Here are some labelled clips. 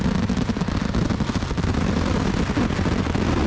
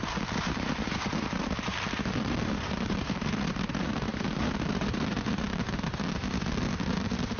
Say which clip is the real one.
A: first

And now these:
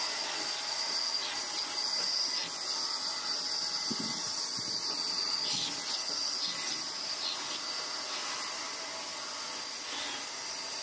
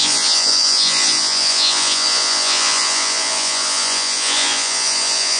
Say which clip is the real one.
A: first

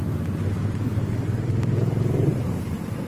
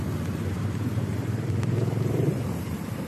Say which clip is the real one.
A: first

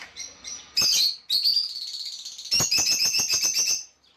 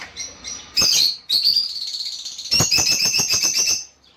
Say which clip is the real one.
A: first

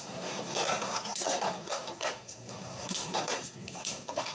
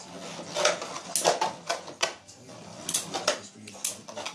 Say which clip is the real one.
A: second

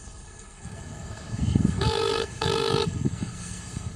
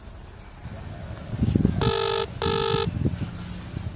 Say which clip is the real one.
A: second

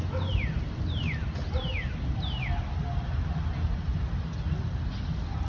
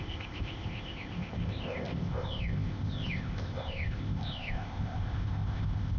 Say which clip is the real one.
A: first